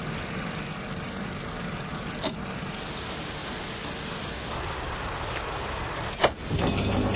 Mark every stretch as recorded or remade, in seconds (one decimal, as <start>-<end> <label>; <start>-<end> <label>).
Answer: 0.0-7.2 remade